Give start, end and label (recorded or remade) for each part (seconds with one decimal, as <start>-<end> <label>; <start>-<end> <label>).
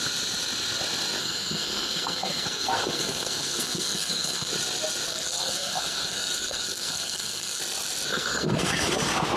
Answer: 0.0-1.2 recorded; 1.2-4.5 remade; 4.5-5.1 recorded; 5.1-7.6 remade; 7.6-8.1 recorded; 8.1-8.9 remade; 8.9-9.4 recorded